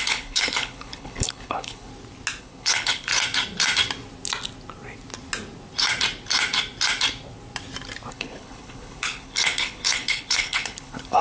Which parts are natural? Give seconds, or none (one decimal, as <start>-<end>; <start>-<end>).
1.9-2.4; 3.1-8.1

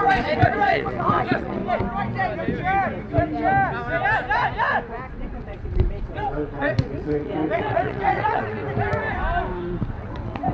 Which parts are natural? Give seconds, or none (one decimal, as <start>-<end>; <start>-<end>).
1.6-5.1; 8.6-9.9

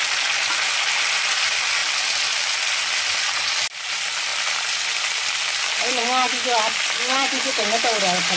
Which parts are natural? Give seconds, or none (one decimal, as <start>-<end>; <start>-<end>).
0.0-8.4

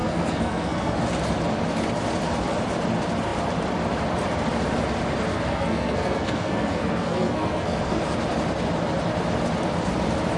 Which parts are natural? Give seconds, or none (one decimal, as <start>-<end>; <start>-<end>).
1.0-5.3; 8.0-10.4

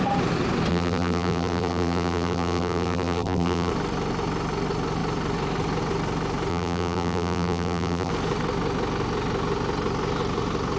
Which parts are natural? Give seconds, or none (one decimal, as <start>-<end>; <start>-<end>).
0.0-0.7; 3.7-6.5; 8.1-10.8

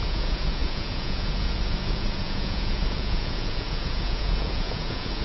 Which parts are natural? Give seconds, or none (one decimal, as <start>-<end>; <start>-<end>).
none

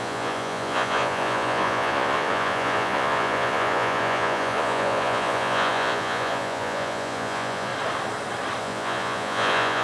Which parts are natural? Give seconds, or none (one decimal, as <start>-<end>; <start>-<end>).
7.7-8.6

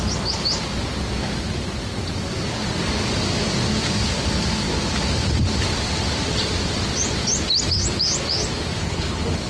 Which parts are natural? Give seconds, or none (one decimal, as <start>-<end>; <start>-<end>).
0.0-8.8